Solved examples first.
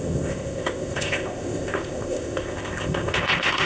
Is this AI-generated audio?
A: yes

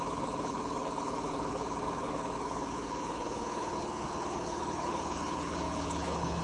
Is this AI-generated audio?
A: yes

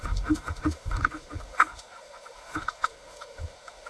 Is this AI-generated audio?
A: yes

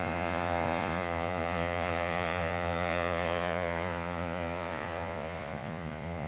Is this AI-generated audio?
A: yes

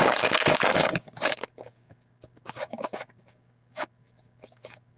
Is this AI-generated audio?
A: yes